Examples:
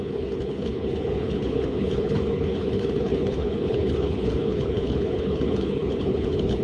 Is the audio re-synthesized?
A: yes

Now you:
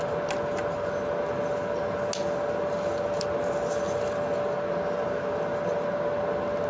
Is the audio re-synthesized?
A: no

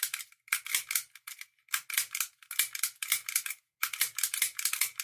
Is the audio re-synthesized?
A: no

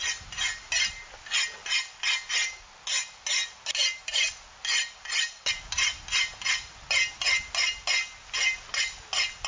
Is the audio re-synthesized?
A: no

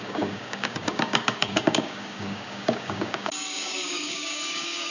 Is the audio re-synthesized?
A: yes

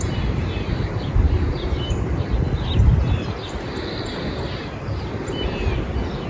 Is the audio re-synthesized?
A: no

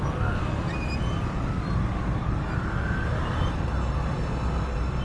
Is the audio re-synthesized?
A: no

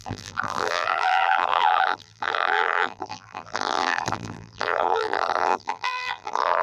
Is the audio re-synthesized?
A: yes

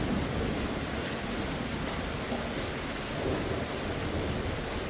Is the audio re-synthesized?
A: no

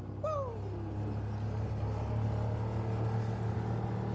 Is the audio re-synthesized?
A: no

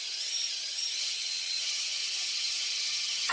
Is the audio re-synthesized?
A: yes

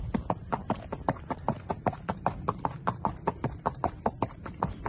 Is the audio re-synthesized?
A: no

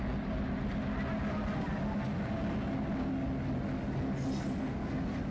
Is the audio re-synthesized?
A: no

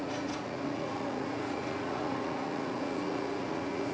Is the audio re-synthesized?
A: yes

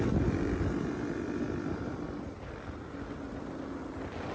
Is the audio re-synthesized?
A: no